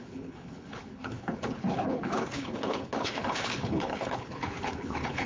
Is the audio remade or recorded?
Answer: remade